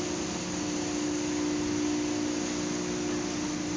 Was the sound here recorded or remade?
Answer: recorded